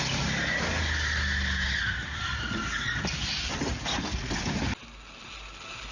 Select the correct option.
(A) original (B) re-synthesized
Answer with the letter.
A